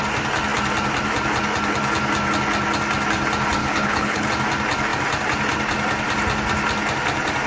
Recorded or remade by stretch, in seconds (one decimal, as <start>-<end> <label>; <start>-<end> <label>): 0.0-3.6 recorded; 3.6-4.3 remade; 4.3-7.5 recorded